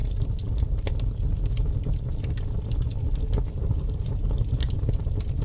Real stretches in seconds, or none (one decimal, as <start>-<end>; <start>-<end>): 0.9-1.6; 4.8-5.4